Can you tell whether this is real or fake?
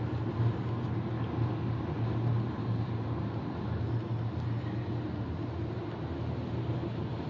real